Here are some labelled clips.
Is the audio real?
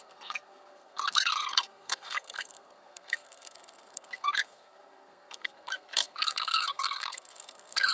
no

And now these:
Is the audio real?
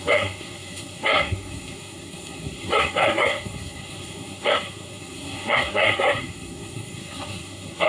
no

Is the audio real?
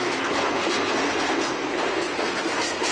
no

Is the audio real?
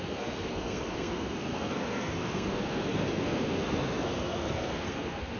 no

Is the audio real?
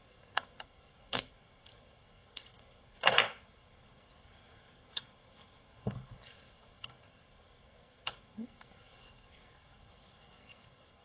no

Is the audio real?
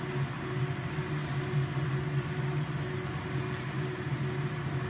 yes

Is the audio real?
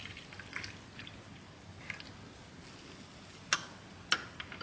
yes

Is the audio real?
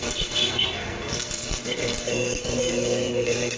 no